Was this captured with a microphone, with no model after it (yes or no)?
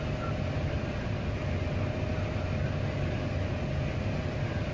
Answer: yes